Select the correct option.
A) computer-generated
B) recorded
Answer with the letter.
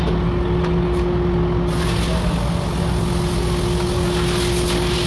B